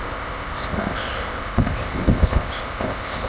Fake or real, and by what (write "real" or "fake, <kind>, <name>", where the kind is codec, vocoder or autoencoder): fake, codec, ZipCodec